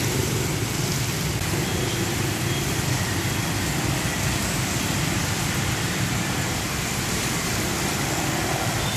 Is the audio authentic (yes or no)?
no